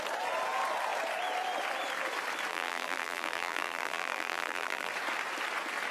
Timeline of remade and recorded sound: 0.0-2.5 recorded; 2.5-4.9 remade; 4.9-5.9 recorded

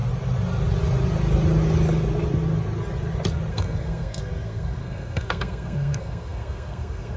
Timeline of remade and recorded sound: 0.0-3.5 recorded; 3.5-7.2 remade

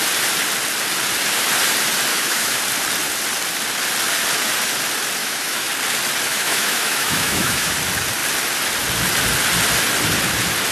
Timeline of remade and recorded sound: 0.0-2.1 recorded; 2.1-2.6 remade; 2.6-5.2 recorded; 5.2-5.7 remade; 5.7-6.3 recorded; 6.3-7.7 remade; 7.7-10.7 recorded

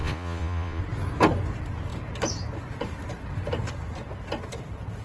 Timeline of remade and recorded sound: 0.0-0.8 remade; 0.8-5.0 recorded

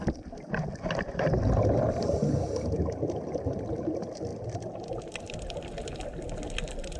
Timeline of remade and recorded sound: 0.0-7.0 recorded

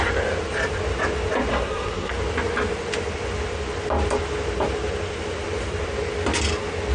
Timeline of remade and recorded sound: 0.0-1.5 recorded; 1.5-2.1 remade; 2.1-6.9 recorded

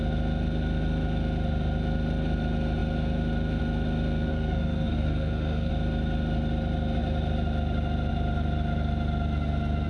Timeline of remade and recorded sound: 0.0-4.3 recorded; 4.3-5.7 remade; 5.7-9.9 recorded